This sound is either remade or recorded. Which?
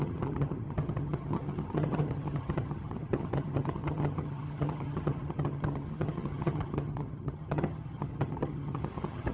remade